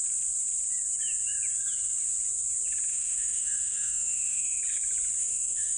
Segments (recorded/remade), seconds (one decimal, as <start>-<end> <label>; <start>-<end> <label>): 0.0-2.9 recorded; 2.9-4.6 remade; 4.6-5.2 recorded; 5.2-5.8 remade